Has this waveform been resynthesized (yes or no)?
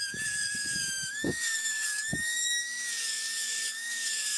yes